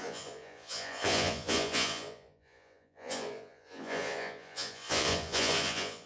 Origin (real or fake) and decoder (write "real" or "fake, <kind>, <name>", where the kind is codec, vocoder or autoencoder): fake, vocoder, Vocos